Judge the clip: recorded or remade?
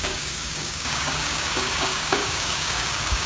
remade